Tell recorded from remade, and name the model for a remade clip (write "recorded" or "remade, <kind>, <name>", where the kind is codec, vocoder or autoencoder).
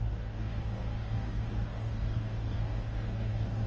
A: remade, codec, DAC